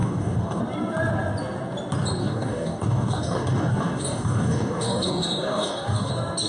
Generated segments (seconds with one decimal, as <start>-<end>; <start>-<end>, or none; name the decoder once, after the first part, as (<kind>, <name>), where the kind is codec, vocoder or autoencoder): 0.0-0.6 (codec, DAC); 2.2-6.1